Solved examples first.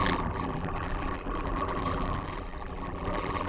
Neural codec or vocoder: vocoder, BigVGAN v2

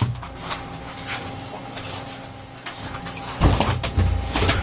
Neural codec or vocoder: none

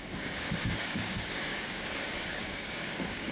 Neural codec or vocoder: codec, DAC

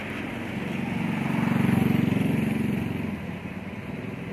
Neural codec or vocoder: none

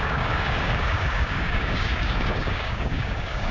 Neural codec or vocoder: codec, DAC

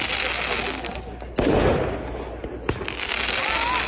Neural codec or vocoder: none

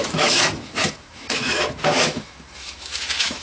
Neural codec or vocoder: autoencoder, DAC-VAE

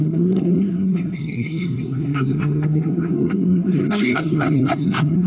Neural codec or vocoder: codec, SNAC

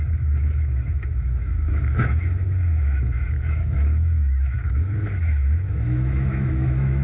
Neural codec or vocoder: autoencoder, DAC-VAE